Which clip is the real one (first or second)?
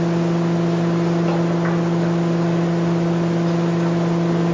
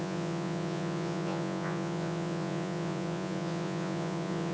first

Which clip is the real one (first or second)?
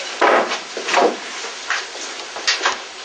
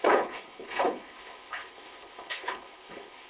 first